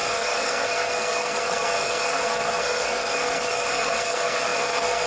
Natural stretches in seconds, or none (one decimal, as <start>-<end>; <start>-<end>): none